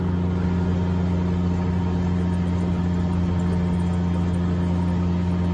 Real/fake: real